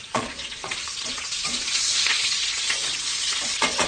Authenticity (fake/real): fake